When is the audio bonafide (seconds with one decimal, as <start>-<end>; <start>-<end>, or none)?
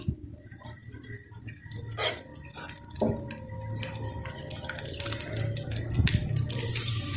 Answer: 0.0-7.2